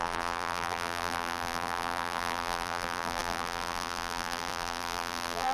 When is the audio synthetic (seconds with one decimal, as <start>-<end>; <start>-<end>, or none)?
0.0-5.5